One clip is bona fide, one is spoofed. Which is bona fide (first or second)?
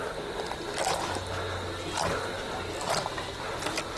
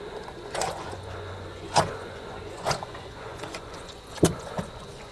first